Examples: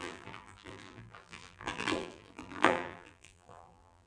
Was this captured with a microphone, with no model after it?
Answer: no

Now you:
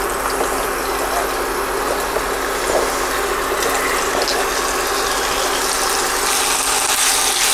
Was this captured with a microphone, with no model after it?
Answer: yes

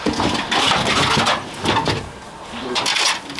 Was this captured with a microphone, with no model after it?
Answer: yes